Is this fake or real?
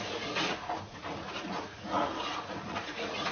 fake